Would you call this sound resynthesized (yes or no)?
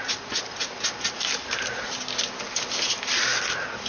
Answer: no